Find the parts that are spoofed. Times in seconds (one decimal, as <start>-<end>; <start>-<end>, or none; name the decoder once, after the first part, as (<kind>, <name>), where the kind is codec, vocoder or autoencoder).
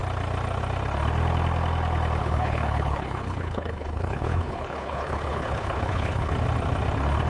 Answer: 2.2-6.3 (codec, HILCodec)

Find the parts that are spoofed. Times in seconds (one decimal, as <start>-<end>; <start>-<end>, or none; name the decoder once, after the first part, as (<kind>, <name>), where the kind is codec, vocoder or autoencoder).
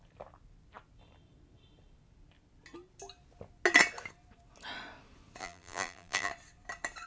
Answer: 5.4-6.3 (vocoder, BigVGAN v2)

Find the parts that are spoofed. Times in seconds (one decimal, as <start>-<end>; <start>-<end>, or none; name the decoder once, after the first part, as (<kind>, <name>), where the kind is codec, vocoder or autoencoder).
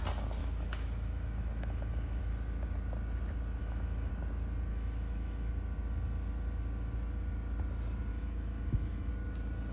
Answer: 0.4-2.2 (autoencoder, DAC-VAE); 3.6-4.1; 4.7-5.5; 8.1-9.1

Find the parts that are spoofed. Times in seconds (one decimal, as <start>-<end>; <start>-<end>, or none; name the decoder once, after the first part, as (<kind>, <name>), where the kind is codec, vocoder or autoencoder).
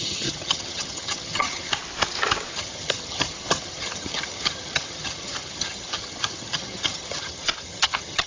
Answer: 0.0-1.7 (vocoder, HiFi-GAN); 2.5-8.3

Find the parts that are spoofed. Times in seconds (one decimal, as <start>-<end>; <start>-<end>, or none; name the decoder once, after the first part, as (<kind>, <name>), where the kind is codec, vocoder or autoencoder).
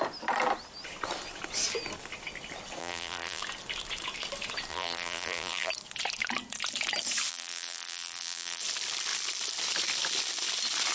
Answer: 2.8-3.4 (vocoder, BigVGAN v2); 4.7-5.7; 7.3-8.6